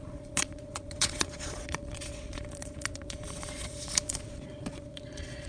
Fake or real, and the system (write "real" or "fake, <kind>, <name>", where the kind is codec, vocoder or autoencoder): fake, vocoder, Vocos